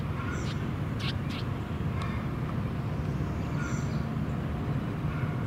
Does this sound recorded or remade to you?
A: recorded